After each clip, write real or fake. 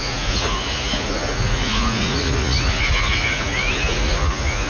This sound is fake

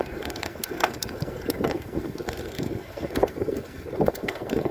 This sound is fake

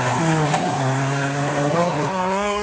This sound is fake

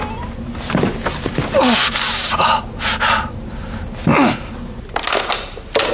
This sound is real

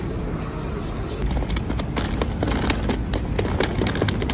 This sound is real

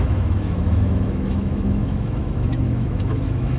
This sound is fake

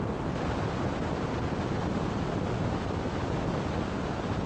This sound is real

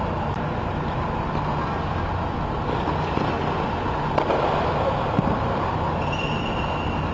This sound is real